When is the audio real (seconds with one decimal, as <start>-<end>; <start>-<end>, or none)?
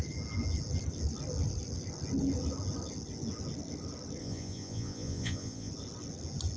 0.0-4.2; 5.7-6.6